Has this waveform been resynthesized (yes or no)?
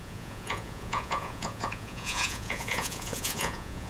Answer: yes